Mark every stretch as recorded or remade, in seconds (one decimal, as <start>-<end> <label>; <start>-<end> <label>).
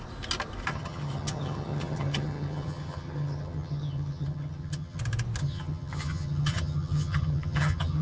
0.0-0.7 recorded; 0.7-5.0 remade; 5.0-5.4 recorded; 5.4-8.0 remade